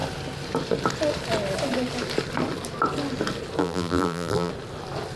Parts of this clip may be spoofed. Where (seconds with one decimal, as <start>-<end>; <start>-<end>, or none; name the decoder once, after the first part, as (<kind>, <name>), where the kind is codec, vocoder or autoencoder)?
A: 3.6-4.5 (vocoder, BigVGAN v2)